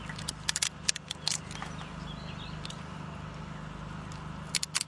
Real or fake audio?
real